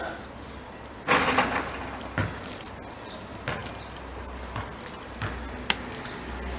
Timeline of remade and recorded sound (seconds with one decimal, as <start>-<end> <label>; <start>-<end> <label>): 0.0-6.6 recorded